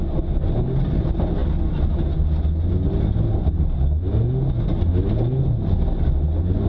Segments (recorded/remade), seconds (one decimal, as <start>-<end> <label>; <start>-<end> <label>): 0.0-6.7 recorded